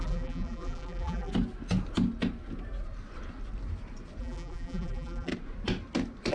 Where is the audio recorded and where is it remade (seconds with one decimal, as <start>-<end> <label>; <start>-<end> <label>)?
0.0-1.3 remade; 1.3-4.2 recorded; 4.2-5.3 remade; 5.3-6.3 recorded